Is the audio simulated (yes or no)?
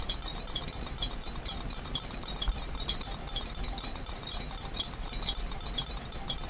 yes